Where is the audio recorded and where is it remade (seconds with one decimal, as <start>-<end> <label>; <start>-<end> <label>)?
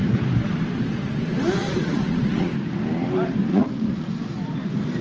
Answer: 0.0-1.6 recorded; 1.6-2.5 remade; 2.5-3.5 recorded; 3.5-4.1 remade; 4.1-5.0 recorded